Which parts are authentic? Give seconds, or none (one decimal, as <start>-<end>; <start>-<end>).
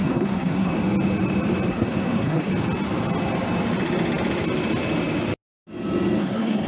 0.8-1.7; 2.5-6.2